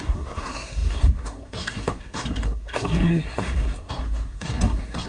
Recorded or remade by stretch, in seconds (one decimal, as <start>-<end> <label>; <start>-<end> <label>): 0.0-5.1 remade